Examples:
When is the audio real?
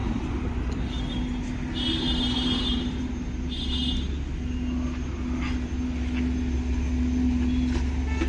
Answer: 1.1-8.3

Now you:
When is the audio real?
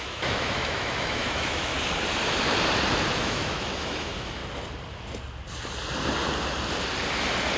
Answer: 1.7-3.2; 4.4-7.6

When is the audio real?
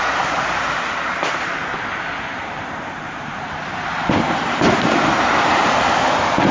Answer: 0.6-2.4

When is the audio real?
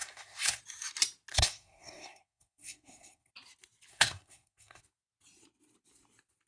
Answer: 0.6-1.3; 3.3-3.9; 4.8-6.5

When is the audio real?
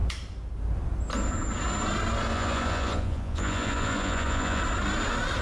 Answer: 0.0-2.3; 4.6-5.4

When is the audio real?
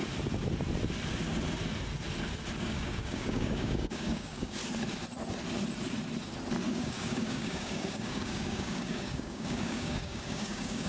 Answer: 0.0-2.6; 4.6-6.7